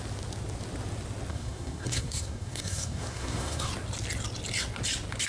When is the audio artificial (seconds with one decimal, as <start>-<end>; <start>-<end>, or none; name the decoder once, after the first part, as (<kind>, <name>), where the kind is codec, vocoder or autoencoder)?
1.3-3.7 (codec, SNAC)